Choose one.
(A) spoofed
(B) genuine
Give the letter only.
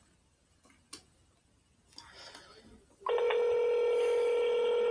B